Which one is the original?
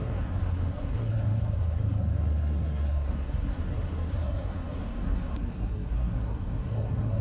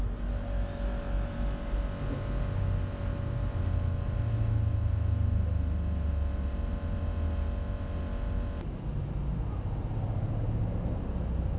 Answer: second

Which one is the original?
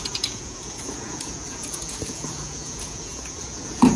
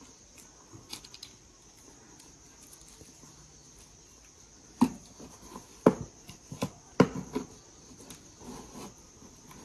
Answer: second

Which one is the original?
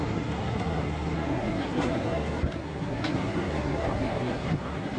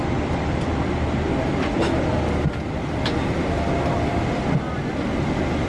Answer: second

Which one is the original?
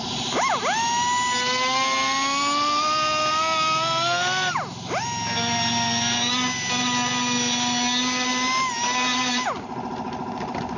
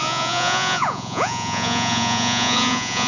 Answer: first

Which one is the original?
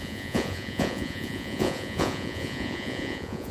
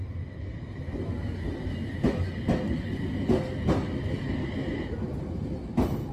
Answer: second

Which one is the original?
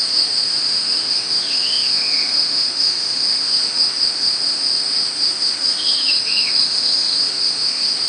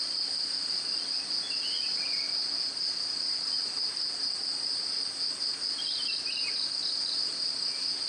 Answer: second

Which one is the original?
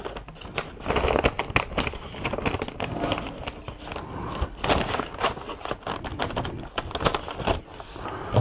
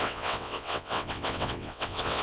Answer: first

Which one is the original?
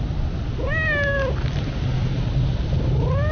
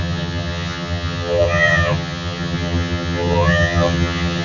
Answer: first